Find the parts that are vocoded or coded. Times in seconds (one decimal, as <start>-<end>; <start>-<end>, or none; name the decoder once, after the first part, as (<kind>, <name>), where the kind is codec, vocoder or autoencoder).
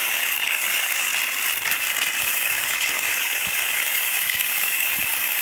0.0-1.1 (codec, DAC); 2.2-5.4